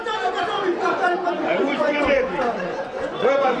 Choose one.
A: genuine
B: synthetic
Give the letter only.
B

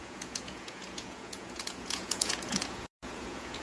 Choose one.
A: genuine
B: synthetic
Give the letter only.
B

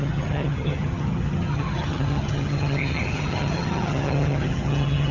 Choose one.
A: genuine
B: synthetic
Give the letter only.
B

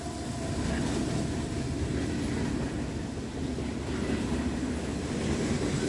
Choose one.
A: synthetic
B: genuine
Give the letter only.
B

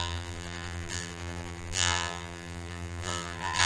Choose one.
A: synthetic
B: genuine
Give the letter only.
A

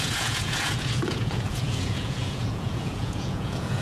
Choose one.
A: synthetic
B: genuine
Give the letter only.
A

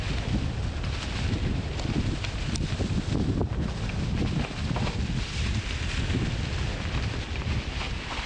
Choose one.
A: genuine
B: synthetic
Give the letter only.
A